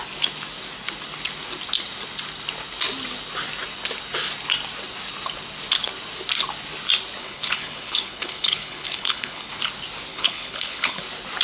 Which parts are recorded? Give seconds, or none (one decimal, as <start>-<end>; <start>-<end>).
0.0-7.2; 9.5-10.1; 11.0-11.4